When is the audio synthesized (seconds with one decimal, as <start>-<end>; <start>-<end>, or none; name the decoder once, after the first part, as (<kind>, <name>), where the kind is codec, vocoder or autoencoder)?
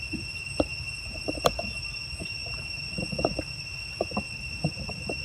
none